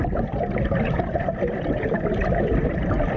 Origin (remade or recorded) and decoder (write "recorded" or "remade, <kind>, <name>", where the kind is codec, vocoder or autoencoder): remade, vocoder, BigVGAN v2